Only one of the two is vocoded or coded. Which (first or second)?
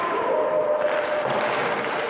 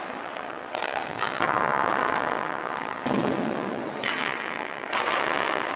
second